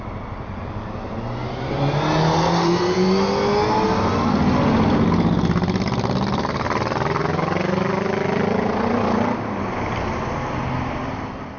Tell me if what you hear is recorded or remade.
recorded